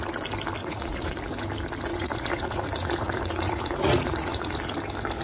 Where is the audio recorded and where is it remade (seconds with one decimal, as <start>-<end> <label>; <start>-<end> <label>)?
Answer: 0.0-0.6 recorded; 0.6-1.2 remade; 1.2-1.9 recorded; 1.9-4.5 remade; 4.5-5.2 recorded